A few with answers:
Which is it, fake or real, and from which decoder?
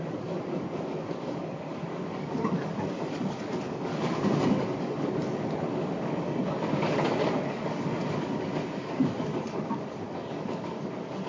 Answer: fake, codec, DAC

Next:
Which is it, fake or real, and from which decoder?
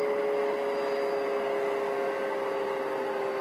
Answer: real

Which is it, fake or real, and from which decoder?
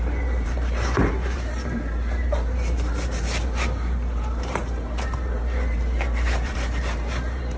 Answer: fake, vocoder, BigVGAN v2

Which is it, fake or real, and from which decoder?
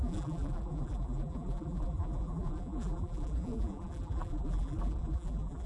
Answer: fake, vocoder, BigVGAN v2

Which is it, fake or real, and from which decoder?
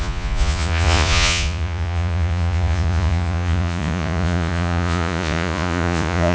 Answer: fake, vocoder, Vocos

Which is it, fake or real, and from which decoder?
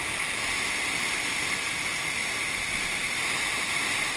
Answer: real